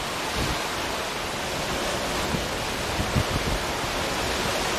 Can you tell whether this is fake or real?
real